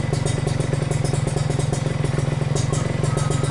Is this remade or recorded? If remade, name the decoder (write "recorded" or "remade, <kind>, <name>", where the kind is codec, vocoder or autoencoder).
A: recorded